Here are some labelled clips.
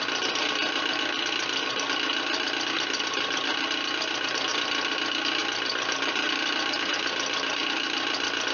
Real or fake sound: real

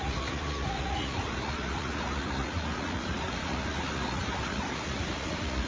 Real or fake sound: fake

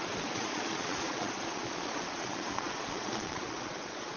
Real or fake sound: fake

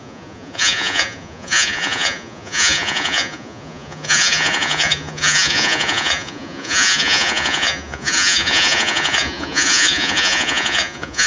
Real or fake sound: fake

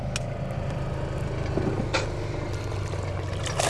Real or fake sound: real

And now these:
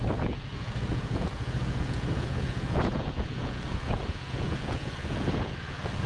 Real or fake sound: fake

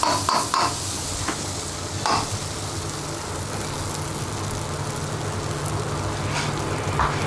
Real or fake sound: real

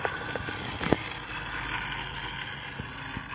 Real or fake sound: real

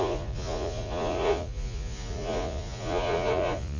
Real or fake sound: fake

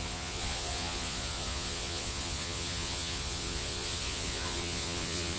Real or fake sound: fake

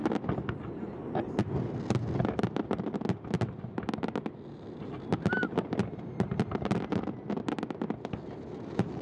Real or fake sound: real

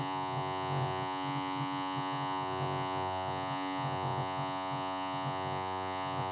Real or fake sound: fake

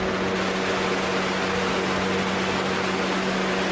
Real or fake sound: real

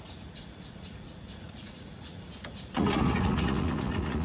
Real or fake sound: fake